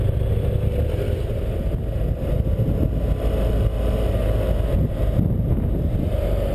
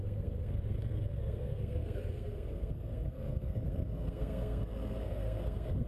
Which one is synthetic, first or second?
second